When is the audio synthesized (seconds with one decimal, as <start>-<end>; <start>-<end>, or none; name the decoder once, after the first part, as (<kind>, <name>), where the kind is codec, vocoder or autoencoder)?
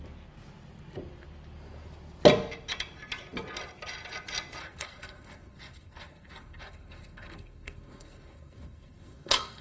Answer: 4.6-9.6 (codec, SNAC)